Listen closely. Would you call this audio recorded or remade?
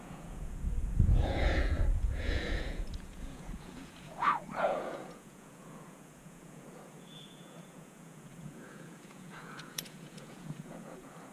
remade